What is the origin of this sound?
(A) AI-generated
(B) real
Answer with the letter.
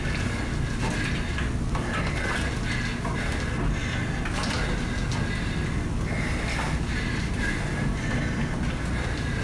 B